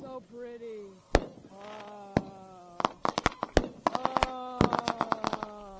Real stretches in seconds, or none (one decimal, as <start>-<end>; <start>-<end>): 0.0-5.8